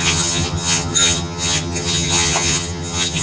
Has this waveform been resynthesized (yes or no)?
yes